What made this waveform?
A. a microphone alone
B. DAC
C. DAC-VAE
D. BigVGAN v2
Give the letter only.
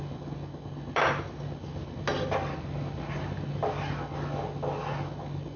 A